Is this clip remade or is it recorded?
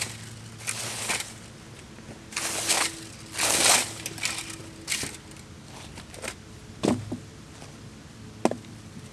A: recorded